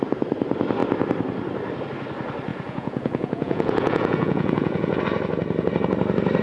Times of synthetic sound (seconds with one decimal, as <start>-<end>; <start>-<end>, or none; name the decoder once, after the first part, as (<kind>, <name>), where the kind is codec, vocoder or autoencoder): 2.5-5.0 (vocoder, Vocos)